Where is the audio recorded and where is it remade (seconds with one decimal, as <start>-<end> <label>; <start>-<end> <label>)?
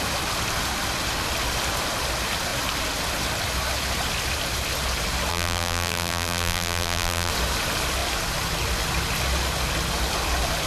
0.0-5.3 recorded; 5.3-7.3 remade; 7.3-10.7 recorded